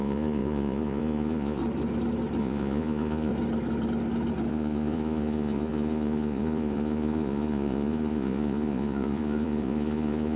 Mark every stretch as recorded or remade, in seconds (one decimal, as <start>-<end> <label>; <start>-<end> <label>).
0.0-1.6 remade; 1.6-2.4 recorded; 2.4-3.3 remade; 3.3-4.5 recorded; 4.5-10.4 remade